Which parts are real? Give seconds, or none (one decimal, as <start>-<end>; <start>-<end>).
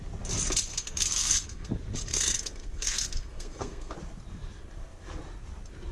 0.0-0.7; 1.7-2.1; 3.9-5.9